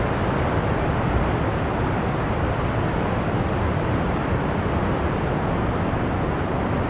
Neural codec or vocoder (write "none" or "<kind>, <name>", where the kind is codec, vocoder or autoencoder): none